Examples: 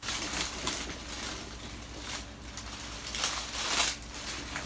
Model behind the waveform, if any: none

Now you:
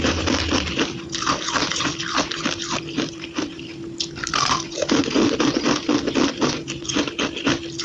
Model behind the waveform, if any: vocoder, BigVGAN v2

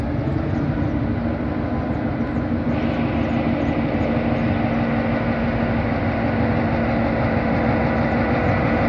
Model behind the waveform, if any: none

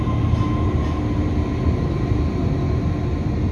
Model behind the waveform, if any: none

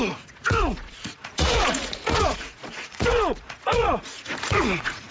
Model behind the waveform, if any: vocoder, Vocos